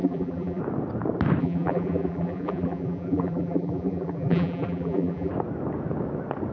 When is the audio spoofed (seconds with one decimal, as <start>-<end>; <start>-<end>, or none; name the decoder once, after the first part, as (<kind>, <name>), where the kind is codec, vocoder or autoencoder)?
0.0-0.6 (vocoder, BigVGAN v2); 1.4-5.3